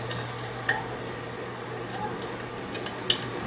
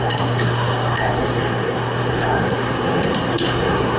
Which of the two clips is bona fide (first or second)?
first